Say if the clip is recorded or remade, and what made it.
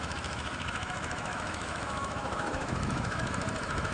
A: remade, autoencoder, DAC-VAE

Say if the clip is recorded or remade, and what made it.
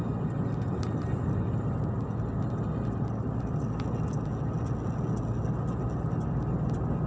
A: recorded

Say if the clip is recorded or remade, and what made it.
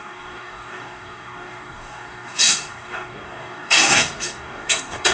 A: remade, codec, DAC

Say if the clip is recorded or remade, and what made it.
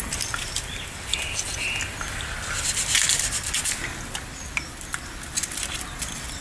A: recorded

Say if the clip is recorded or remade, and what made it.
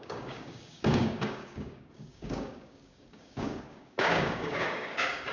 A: remade, codec, DAC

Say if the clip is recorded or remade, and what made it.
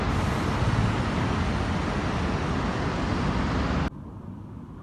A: recorded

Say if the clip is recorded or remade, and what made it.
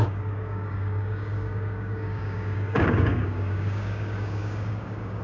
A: remade, codec, DAC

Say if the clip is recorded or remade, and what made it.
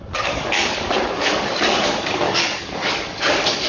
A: remade, codec, DAC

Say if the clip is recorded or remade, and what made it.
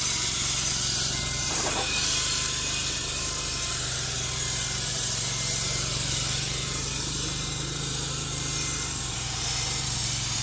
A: remade, vocoder, BigVGAN v2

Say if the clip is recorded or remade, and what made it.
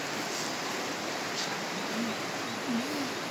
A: recorded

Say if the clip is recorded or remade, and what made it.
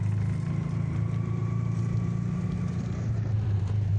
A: recorded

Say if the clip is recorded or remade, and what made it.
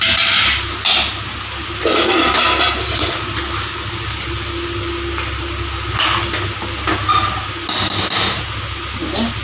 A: recorded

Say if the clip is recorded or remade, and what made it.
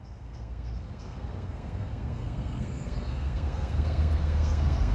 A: remade, codec, SNAC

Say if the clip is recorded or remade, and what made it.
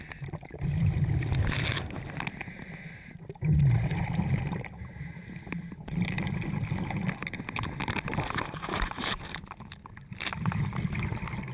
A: recorded